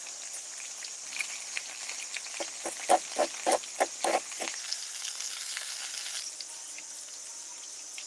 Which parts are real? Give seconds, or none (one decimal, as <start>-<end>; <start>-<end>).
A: 0.0-5.0; 5.7-8.1